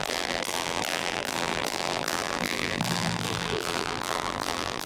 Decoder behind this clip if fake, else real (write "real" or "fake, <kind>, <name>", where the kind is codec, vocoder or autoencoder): fake, vocoder, BigVGAN v2